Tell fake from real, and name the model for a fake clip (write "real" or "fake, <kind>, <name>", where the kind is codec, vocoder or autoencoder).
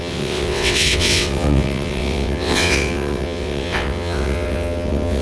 fake, vocoder, WaveNeXt